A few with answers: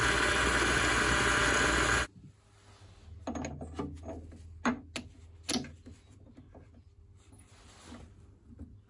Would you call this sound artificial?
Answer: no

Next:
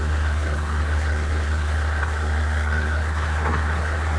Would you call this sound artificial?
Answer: yes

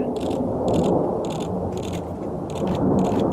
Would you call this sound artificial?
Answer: no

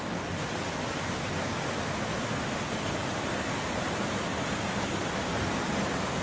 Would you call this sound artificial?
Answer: no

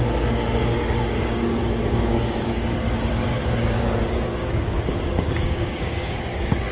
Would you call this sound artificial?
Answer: yes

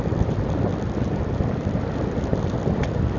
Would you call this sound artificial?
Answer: no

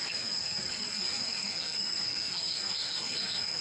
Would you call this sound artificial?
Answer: yes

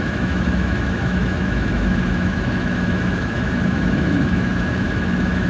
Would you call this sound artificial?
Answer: yes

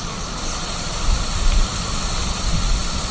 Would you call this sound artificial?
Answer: no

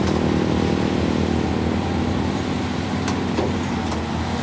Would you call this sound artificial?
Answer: no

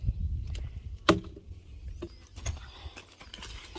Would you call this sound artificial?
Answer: no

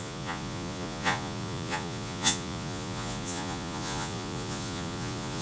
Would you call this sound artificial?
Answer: yes